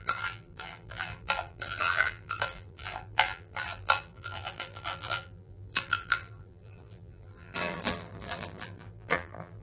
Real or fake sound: fake